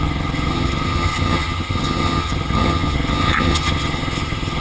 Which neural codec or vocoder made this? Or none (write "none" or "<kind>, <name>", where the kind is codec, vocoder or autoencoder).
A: vocoder, HiFi-GAN